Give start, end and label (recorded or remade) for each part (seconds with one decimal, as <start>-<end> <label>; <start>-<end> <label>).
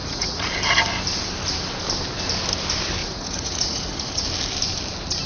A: 0.0-0.5 remade; 0.5-3.0 recorded; 3.0-4.2 remade; 4.2-5.3 recorded